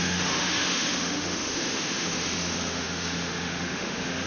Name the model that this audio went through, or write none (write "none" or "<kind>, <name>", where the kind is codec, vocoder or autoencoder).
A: autoencoder, DAC-VAE